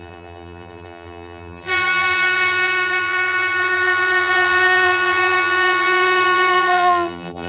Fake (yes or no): yes